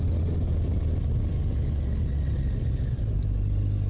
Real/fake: real